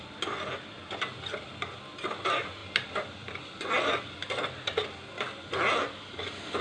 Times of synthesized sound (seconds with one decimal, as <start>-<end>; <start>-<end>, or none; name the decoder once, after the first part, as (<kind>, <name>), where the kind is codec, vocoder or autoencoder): none